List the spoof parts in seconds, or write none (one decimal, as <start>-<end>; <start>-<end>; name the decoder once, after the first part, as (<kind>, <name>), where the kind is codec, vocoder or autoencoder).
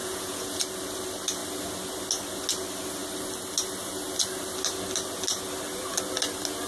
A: 0.0-0.6 (vocoder, Vocos)